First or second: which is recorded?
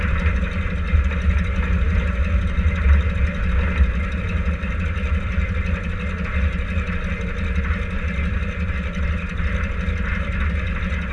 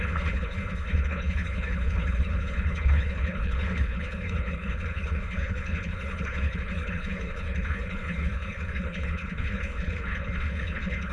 first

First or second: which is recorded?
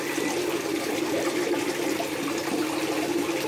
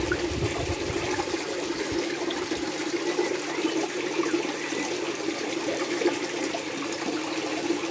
first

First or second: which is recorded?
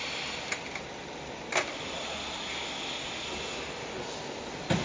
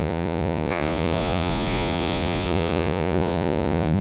first